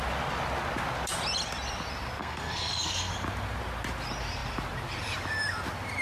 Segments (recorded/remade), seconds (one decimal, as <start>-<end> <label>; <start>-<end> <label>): 0.0-2.2 recorded; 2.2-3.1 remade; 3.1-6.0 recorded